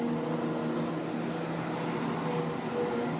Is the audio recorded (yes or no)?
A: yes